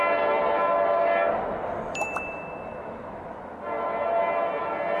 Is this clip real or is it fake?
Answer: real